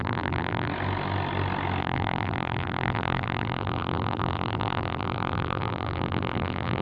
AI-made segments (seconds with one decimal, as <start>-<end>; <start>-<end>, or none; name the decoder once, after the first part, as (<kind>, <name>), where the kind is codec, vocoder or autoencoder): 0.0-0.7 (vocoder, BigVGAN v2); 1.8-6.8